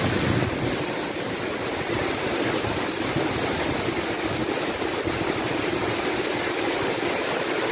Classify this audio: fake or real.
real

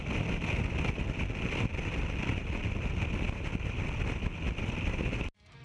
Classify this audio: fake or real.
real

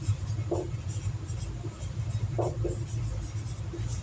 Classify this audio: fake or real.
real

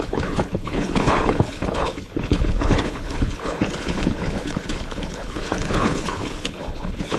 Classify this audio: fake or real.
fake